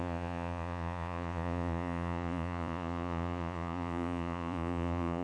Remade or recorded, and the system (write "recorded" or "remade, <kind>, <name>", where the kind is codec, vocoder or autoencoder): remade, vocoder, Vocos